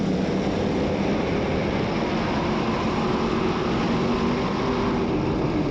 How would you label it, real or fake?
real